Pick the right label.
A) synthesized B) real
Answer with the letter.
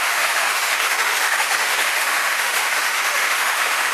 A